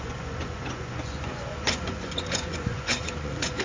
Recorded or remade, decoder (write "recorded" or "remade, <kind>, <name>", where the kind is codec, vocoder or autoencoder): remade, vocoder, Vocos